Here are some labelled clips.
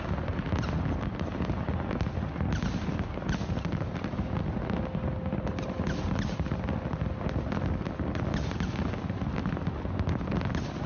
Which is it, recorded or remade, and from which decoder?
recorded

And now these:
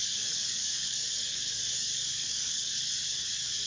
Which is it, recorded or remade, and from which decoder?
remade, codec, DAC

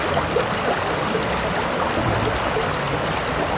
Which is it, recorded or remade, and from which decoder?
recorded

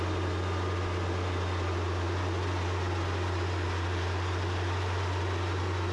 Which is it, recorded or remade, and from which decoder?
recorded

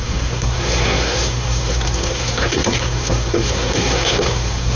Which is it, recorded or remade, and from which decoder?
remade, codec, SNAC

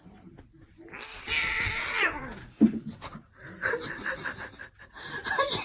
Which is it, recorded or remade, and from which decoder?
recorded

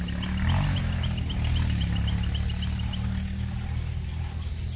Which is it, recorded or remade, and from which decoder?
recorded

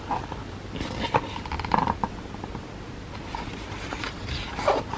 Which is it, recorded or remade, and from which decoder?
recorded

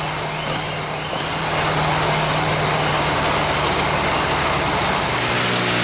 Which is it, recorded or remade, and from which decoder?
recorded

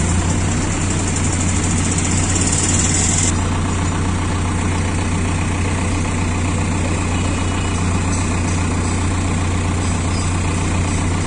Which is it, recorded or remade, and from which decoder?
recorded